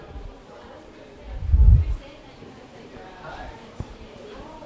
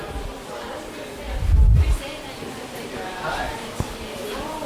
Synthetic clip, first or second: first